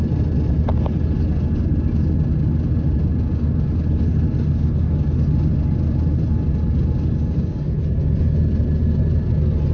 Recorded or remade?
recorded